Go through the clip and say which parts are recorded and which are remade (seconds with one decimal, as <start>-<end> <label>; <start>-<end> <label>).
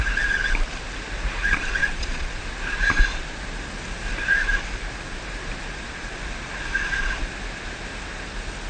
0.0-1.8 recorded; 1.8-2.4 remade; 2.4-8.7 recorded